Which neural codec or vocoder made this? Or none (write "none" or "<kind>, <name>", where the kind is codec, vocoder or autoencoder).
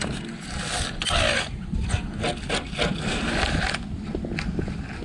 none